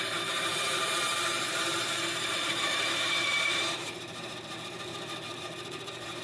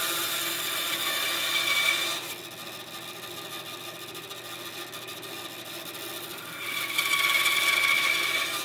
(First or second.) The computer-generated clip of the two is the first